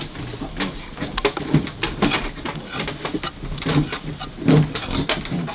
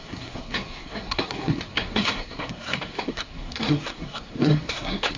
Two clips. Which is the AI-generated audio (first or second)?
second